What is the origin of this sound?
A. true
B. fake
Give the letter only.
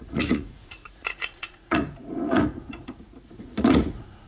B